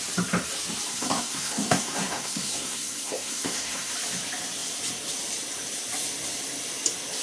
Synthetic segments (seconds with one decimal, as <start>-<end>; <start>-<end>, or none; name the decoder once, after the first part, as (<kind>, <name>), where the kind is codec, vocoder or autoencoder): 0.9-3.9 (codec, SNAC)